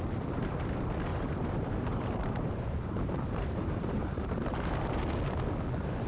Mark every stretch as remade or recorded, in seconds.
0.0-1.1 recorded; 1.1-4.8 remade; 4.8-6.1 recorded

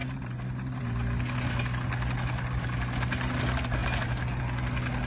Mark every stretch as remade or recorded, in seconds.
0.0-0.8 remade; 0.8-5.1 recorded

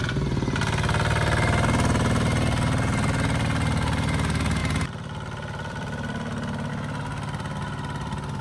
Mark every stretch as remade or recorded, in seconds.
0.0-4.6 recorded; 4.6-6.7 remade; 6.7-8.4 recorded